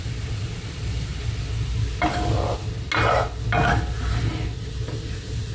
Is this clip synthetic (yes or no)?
no